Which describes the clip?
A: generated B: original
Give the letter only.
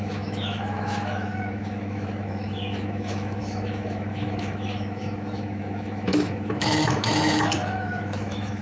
A